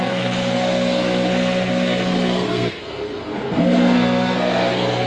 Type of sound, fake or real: fake